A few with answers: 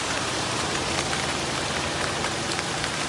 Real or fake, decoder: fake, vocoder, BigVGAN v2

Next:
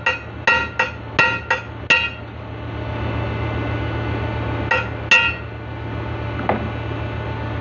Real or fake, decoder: real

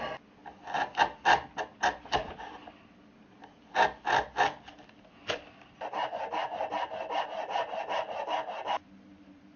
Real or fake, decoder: real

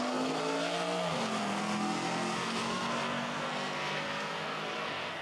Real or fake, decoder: fake, codec, SNAC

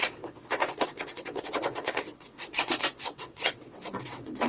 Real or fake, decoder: fake, vocoder, WaveNeXt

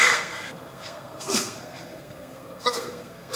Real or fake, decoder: fake, codec, SNAC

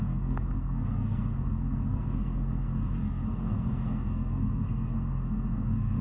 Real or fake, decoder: fake, codec, SNAC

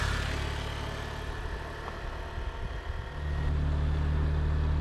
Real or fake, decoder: real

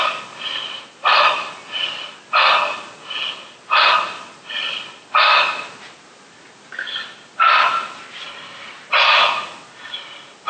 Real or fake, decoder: real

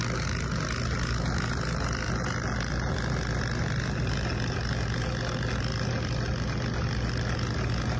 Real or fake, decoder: real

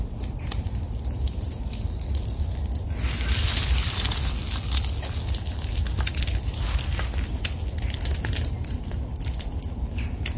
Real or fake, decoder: real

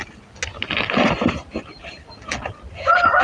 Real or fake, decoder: real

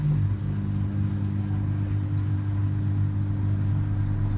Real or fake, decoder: real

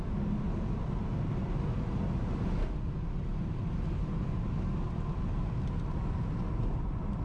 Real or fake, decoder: real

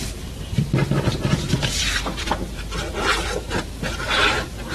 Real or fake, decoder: fake, vocoder, BigVGAN v2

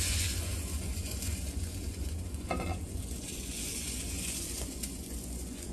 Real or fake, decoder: fake, vocoder, Vocos